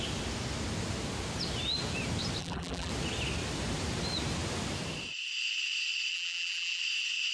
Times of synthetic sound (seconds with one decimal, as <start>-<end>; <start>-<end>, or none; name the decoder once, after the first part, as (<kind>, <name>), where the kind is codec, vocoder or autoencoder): 2.4-2.9 (vocoder, BigVGAN v2); 6.1-6.8